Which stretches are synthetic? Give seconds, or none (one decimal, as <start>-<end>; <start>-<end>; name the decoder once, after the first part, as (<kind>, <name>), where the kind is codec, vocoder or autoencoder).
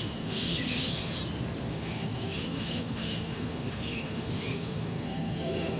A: 0.0-1.2 (autoencoder, DAC-VAE); 1.7-5.8